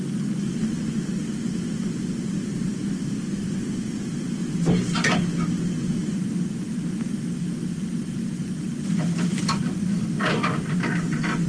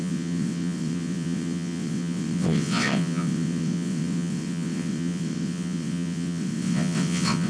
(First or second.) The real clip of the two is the first